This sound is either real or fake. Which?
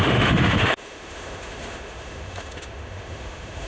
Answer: fake